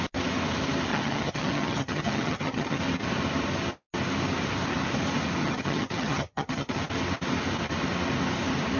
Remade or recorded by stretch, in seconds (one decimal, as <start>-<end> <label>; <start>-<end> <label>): 0.0-0.9 recorded; 0.9-2.8 remade; 2.8-5.4 recorded; 5.4-6.8 remade; 6.8-8.8 recorded